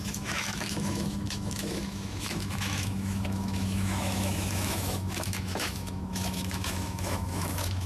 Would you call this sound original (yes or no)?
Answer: no